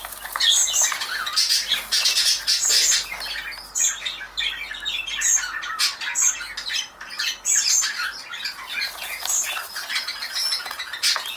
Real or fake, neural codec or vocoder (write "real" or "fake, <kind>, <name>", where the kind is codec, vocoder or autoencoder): real